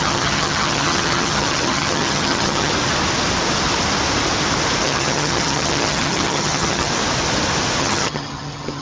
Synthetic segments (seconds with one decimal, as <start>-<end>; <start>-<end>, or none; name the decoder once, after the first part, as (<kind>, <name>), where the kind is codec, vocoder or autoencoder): 0.0-2.7 (vocoder, HiFi-GAN); 4.8-6.9; 7.8-8.8